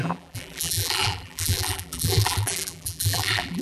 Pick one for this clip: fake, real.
fake